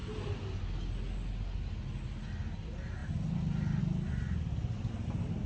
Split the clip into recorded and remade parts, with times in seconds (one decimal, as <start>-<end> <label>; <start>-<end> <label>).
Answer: 0.0-5.5 recorded